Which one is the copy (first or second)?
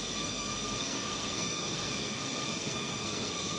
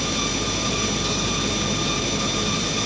first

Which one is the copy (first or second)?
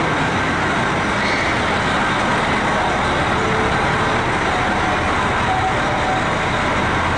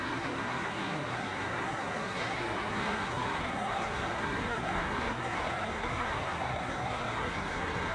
second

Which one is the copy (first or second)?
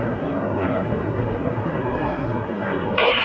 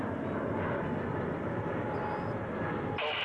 first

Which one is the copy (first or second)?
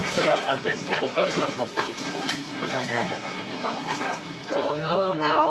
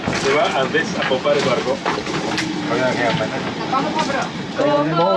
first